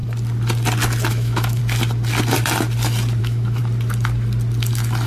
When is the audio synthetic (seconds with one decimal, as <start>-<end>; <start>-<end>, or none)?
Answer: 1.1-1.6; 3.2-3.6